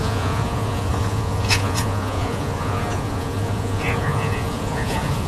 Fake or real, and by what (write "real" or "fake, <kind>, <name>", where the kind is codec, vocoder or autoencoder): fake, vocoder, Vocos